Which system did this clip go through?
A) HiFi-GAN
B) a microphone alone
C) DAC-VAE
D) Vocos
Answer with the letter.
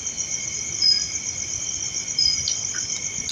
B